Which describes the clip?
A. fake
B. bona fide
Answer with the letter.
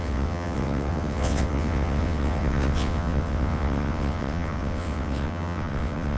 A